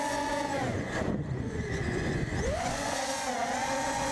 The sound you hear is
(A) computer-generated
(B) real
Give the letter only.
A